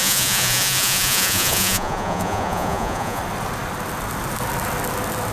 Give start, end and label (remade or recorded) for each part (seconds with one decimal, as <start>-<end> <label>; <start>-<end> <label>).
0.0-3.2 remade; 3.2-5.3 recorded